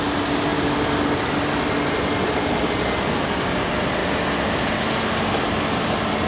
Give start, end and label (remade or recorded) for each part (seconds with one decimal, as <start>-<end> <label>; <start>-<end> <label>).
0.0-6.3 recorded